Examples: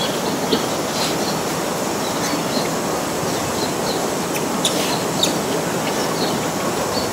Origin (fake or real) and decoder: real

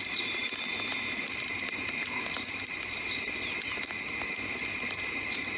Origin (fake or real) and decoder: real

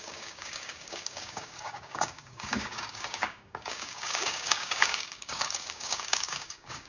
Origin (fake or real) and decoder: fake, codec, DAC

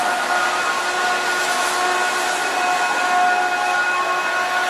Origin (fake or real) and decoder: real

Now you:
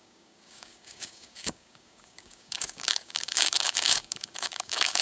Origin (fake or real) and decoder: fake, codec, DAC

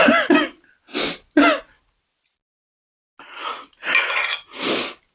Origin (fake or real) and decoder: real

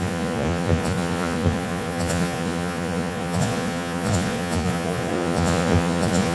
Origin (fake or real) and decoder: fake, vocoder, Vocos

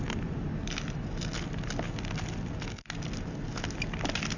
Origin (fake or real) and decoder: real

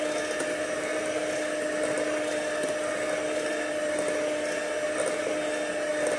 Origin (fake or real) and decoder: real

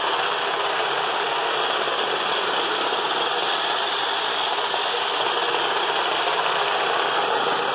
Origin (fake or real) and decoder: real